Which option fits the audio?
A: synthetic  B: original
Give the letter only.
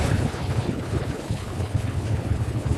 A